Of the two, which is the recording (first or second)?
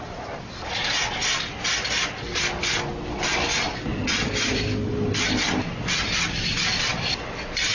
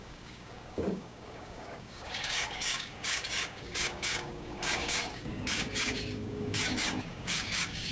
first